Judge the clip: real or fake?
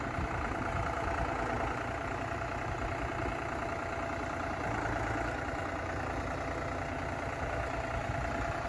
real